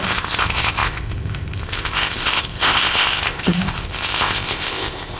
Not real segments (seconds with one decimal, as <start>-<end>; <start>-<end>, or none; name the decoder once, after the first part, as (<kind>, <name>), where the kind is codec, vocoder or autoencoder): 0.0-5.2 (codec, ZipCodec)